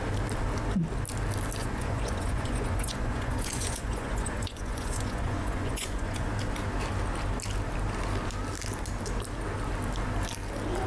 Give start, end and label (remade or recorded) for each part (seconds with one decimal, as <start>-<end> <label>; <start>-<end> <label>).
0.0-1.6 recorded; 1.6-6.3 remade; 6.3-10.9 recorded